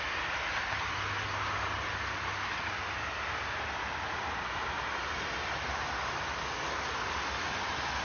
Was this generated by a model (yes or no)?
no